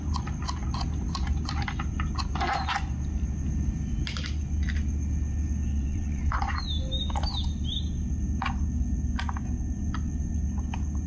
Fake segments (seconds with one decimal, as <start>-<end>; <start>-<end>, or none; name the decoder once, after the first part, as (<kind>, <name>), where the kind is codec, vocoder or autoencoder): 5.7-6.4 (vocoder, WaveNeXt)